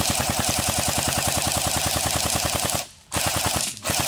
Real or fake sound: real